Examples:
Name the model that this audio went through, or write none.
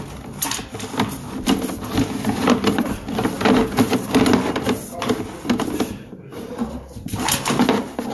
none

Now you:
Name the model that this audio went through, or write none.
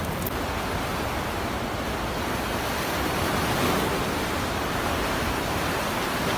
none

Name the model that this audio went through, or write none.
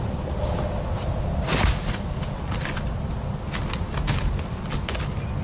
none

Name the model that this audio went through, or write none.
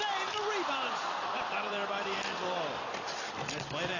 vocoder, BigVGAN v2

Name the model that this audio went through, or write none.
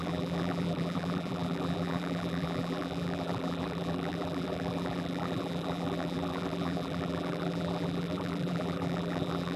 vocoder, BigVGAN v2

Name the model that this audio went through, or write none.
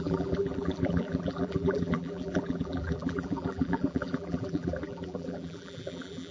vocoder, BigVGAN v2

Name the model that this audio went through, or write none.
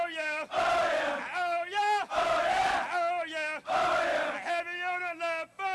none